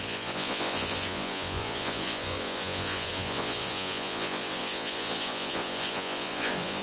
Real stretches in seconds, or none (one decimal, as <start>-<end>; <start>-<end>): none